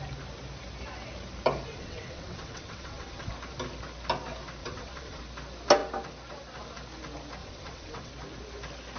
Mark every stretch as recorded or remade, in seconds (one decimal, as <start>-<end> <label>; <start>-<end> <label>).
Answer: 0.0-1.7 recorded; 1.7-3.3 remade; 3.3-4.6 recorded; 4.6-5.2 remade; 5.2-7.4 recorded; 7.4-8.1 remade; 8.1-9.0 recorded